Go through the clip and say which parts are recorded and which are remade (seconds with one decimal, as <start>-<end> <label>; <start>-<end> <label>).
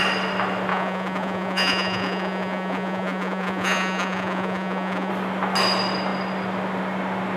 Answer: 0.0-0.7 recorded; 0.7-5.1 remade; 5.1-7.4 recorded